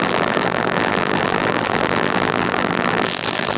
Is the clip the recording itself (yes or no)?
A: no